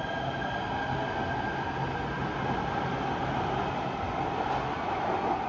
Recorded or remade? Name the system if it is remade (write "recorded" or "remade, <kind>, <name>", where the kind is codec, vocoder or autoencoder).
recorded